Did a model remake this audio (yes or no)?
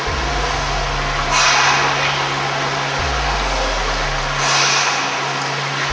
no